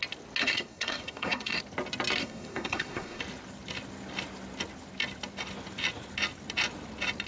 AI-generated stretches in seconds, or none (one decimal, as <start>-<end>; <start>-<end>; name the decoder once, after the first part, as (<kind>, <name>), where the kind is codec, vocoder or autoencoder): 0.4-1.6 (codec, SNAC); 2.2-3.2